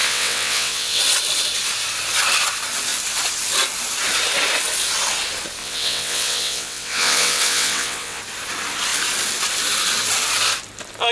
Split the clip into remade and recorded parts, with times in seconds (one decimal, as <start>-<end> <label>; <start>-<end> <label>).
0.0-1.0 remade; 1.0-5.6 recorded; 5.6-8.2 remade; 8.2-11.1 recorded